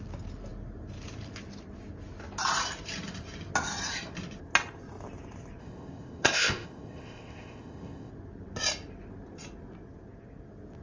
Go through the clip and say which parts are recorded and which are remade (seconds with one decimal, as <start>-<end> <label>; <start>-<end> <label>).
0.0-5.6 recorded; 5.6-8.1 remade; 8.1-10.8 recorded

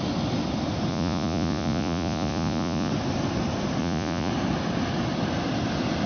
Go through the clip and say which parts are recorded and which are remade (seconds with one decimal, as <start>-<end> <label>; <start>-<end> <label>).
0.0-0.9 recorded; 0.9-2.9 remade; 2.9-3.8 recorded; 3.8-4.3 remade; 4.3-6.1 recorded

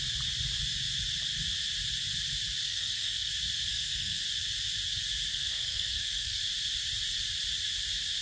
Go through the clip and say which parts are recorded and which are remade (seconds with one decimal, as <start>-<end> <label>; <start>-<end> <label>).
0.0-2.6 recorded; 2.6-3.3 remade; 3.3-3.7 recorded; 3.7-4.2 remade; 4.2-5.3 recorded; 5.3-6.4 remade; 6.4-8.2 recorded

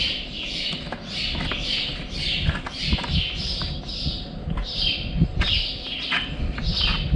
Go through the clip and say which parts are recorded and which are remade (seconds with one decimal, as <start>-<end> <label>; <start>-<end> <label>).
0.0-5.3 recorded; 5.3-5.9 remade; 5.9-7.2 recorded

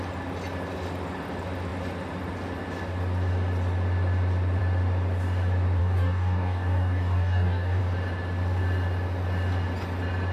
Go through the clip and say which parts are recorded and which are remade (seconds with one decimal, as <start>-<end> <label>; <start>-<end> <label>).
0.0-5.8 recorded; 5.8-7.8 remade; 7.8-10.3 recorded